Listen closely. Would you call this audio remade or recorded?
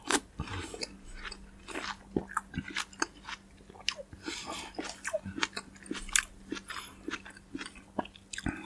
recorded